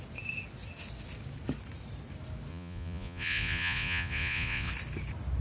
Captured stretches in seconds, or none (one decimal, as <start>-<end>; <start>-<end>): 0.0-2.5; 4.7-5.4